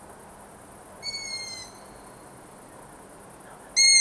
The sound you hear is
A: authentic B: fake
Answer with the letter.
A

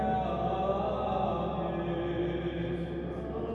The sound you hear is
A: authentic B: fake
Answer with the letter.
A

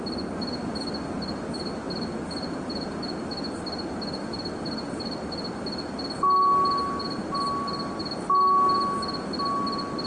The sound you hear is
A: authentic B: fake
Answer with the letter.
A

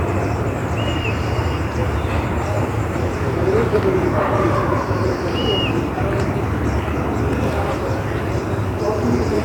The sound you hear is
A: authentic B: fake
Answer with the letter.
B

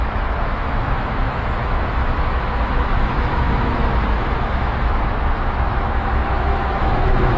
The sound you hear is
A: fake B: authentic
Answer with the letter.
A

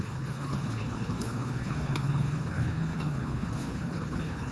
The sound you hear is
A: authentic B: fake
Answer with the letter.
B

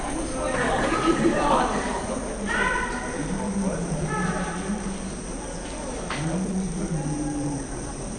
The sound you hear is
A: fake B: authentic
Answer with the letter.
A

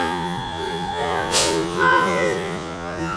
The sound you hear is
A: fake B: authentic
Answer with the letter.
A